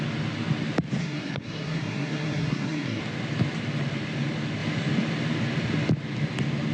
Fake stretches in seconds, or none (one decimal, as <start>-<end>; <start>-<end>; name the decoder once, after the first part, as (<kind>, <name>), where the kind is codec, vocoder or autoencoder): 1.0-3.0 (codec, SNAC)